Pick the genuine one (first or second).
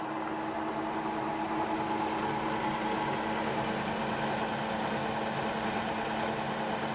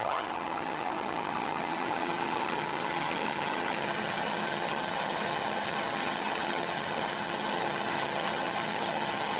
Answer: first